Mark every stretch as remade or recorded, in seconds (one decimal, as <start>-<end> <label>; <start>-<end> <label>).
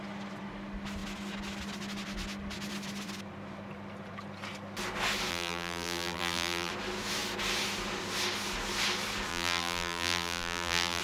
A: 0.0-5.3 recorded; 5.3-6.7 remade; 6.7-9.3 recorded; 9.3-11.0 remade